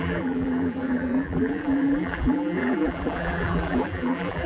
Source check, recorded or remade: remade